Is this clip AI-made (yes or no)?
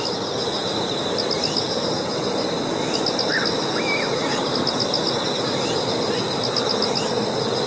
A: no